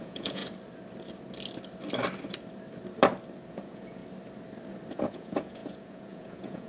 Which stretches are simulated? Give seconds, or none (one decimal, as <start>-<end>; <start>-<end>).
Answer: 0.0-0.4; 3.5-4.0; 4.9-6.7